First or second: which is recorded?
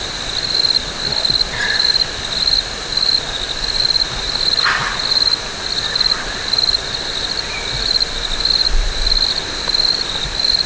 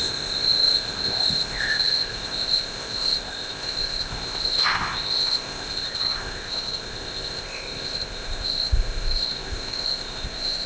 first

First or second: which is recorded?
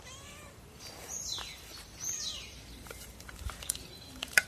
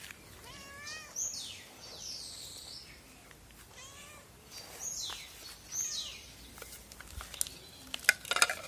second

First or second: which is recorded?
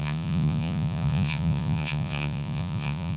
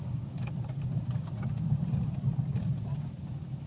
second